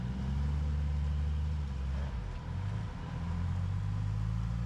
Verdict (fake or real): real